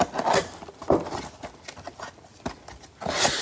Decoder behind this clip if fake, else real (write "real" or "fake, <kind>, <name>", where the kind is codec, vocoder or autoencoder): real